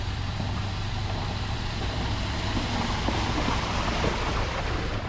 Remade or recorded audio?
remade